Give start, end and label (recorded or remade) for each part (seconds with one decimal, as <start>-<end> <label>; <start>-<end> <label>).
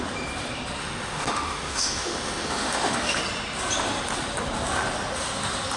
0.0-0.8 recorded; 0.8-3.2 remade; 3.2-5.8 recorded